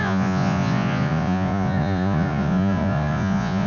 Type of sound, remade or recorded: remade